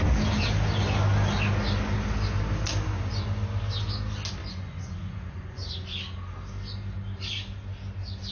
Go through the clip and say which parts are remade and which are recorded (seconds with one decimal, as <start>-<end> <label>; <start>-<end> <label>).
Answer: 0.0-4.4 recorded; 4.4-5.7 remade; 5.7-8.3 recorded